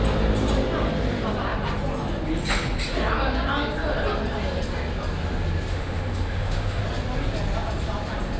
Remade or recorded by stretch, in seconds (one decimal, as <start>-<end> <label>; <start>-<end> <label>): 0.0-5.7 recorded; 5.7-6.8 remade; 6.8-8.4 recorded